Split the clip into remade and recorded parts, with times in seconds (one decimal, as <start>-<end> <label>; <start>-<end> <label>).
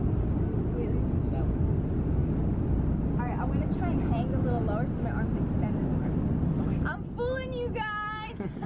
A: 0.0-8.7 recorded